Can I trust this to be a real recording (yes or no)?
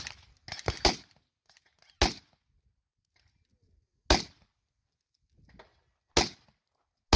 yes